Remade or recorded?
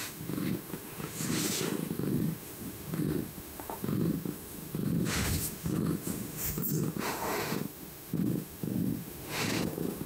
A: remade